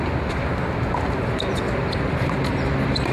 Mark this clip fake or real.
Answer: real